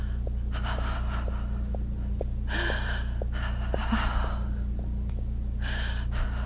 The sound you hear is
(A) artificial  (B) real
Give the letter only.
B